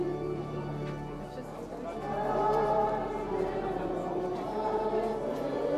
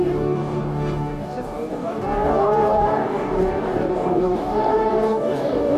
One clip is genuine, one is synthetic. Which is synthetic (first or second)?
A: second